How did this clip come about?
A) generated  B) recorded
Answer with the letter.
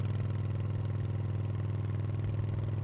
B